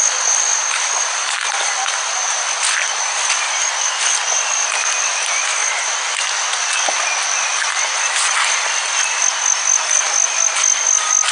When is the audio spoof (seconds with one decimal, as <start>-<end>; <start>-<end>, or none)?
none